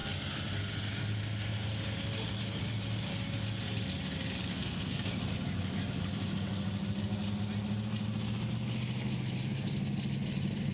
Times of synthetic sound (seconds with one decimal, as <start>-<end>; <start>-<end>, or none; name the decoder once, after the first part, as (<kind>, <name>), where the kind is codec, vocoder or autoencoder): 4.5-5.1 (codec, SNAC)